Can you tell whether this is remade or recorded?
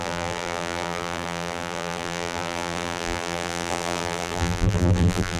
remade